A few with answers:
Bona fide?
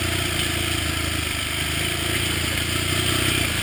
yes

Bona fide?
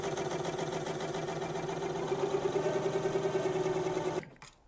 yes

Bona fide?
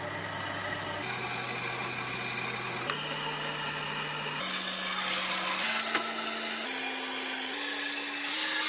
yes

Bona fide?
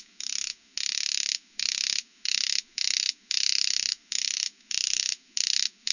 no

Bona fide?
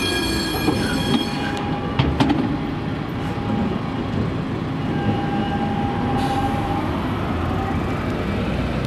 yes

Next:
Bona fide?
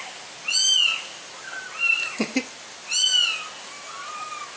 yes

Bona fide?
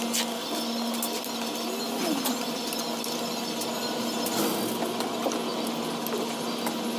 yes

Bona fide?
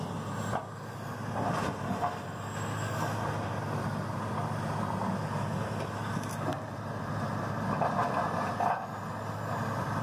yes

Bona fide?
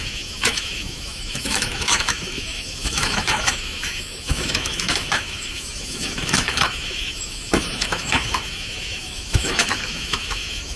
no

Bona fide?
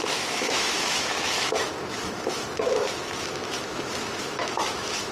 no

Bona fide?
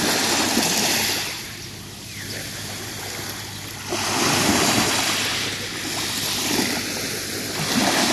yes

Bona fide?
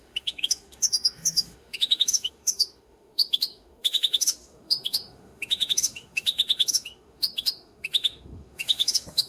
no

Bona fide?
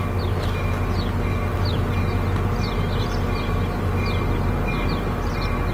yes